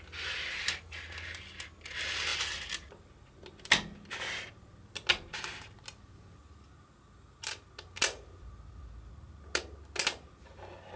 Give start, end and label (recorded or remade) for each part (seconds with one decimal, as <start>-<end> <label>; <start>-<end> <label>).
0.0-11.0 recorded